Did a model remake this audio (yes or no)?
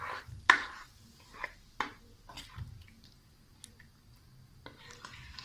no